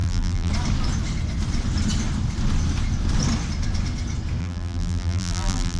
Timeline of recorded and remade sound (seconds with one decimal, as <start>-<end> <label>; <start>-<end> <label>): 0.0-0.5 remade; 0.5-4.4 recorded; 4.4-5.8 remade